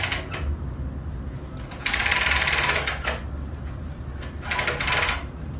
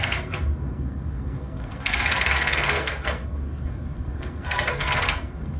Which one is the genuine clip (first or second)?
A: first